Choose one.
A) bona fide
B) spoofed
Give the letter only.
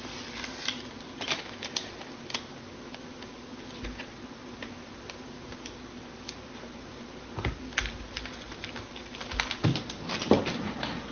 A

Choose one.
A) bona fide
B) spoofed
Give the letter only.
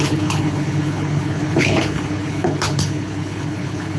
B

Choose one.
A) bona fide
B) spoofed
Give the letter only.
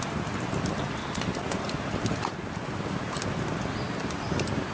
A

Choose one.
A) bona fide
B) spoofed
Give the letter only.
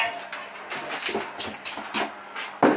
A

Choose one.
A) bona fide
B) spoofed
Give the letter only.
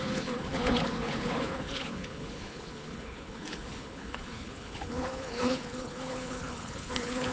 B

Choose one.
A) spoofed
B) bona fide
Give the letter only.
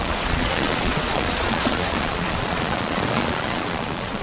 A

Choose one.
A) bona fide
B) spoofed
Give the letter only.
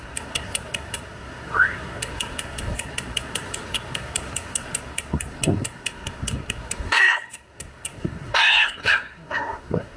B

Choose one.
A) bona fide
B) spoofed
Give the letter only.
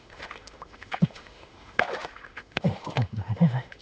B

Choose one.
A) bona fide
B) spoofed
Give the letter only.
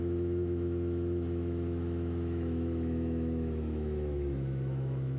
B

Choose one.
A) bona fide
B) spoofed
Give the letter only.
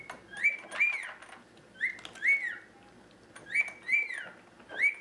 A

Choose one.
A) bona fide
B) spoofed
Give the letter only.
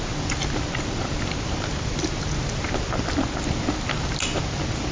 A